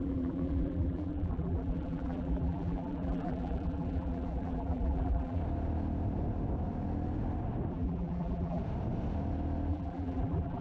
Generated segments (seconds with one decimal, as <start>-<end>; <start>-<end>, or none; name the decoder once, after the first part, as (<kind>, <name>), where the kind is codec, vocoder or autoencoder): 0.0-5.4 (vocoder, BigVGAN v2); 7.7-8.6; 9.7-10.6